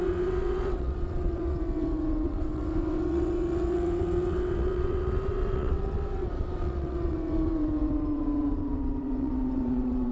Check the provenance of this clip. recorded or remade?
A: remade